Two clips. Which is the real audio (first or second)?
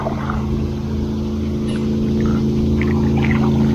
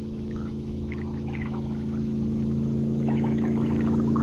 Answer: first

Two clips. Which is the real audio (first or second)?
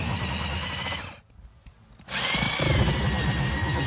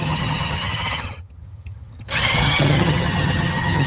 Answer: first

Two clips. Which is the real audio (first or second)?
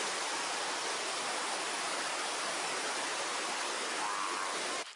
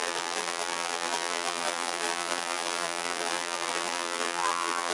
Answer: first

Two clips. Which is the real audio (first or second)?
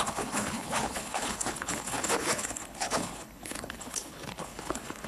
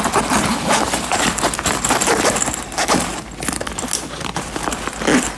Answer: second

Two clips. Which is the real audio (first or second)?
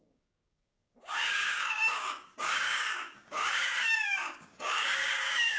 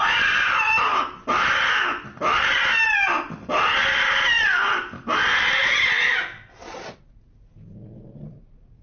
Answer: second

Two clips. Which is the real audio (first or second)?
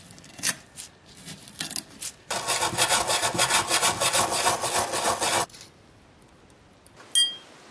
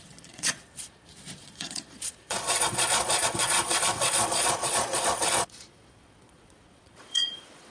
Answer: first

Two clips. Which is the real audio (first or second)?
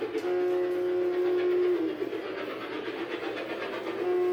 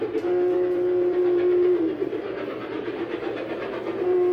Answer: first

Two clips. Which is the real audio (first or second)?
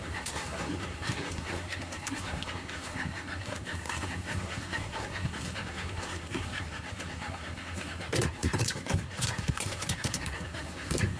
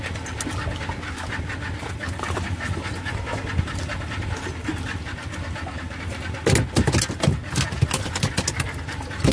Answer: second